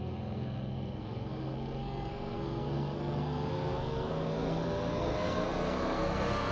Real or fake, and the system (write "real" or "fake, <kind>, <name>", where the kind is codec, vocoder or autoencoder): fake, codec, SNAC